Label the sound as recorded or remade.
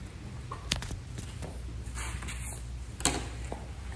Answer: recorded